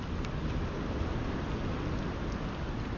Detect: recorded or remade recorded